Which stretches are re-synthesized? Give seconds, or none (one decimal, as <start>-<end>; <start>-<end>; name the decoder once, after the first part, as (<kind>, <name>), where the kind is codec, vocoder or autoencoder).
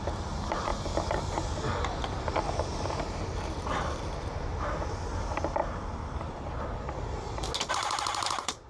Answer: 0.0-0.7 (vocoder, BigVGAN v2); 2.9-5.6; 7.7-8.7